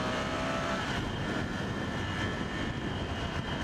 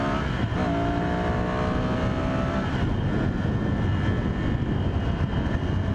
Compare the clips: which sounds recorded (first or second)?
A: second